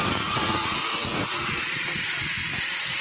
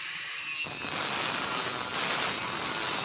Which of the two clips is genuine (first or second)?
second